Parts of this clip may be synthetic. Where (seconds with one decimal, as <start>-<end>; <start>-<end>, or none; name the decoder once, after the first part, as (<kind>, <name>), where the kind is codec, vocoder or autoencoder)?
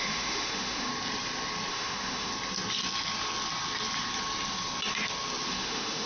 0.0-0.9 (autoencoder, DAC-VAE); 1.7-2.3; 5.5-6.1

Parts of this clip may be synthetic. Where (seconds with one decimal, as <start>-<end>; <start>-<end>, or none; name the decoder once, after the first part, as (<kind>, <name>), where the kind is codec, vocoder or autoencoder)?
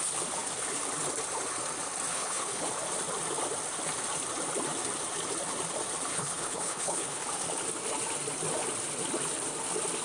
2.1-2.7 (codec, HILCodec); 6.1-7.2